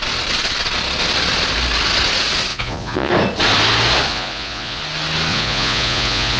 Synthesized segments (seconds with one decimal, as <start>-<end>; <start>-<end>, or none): 2.5-3.1; 4.1-4.8; 5.3-6.4